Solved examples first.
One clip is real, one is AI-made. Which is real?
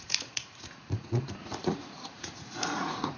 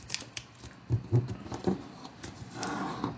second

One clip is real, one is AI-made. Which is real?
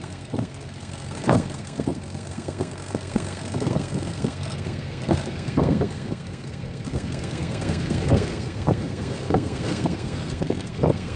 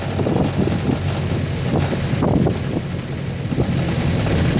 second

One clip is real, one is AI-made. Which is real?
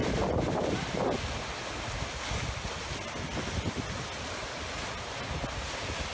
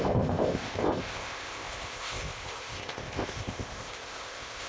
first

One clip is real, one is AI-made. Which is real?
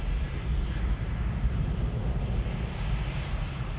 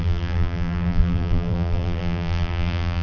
first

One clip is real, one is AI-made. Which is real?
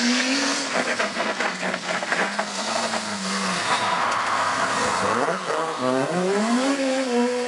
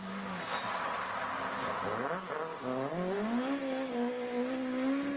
second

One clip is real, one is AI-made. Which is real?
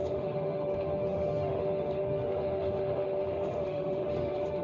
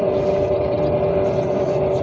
second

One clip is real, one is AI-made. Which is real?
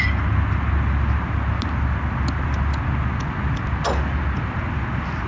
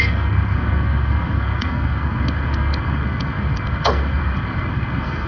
first